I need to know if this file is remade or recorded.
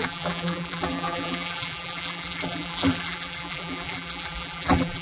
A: remade